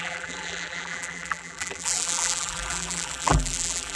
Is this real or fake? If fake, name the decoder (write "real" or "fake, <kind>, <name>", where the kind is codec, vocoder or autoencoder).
fake, vocoder, BigVGAN v2